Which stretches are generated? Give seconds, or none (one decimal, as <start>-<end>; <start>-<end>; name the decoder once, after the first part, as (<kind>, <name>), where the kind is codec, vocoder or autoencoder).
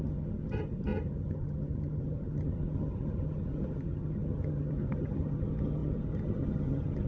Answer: 0.0-7.1 (vocoder, HiFi-GAN)